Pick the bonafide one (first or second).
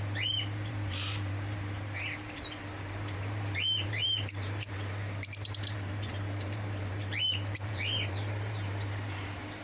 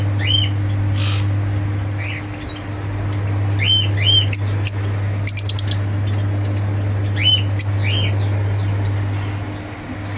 second